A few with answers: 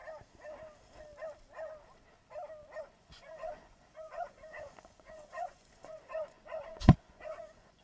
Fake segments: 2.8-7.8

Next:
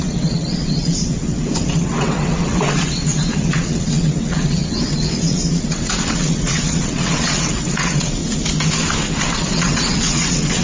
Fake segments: 0.0-8.2; 9.2-10.6

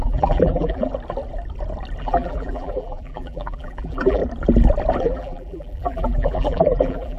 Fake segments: 0.0-0.9; 2.0-4.2; 5.0-7.2

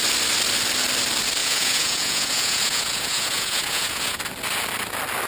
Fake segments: 1.4-4.2

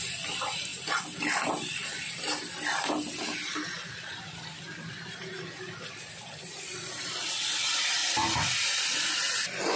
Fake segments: none

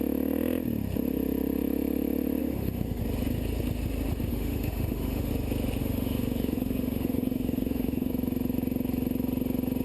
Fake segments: 2.4-3.0; 4.3-5.3; 5.8-8.1